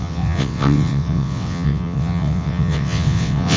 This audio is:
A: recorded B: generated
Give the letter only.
B